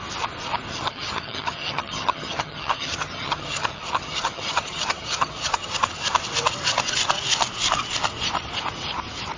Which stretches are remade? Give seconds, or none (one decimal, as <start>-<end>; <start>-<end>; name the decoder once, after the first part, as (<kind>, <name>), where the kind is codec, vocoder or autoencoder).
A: 0.7-5.7 (vocoder, HiFi-GAN)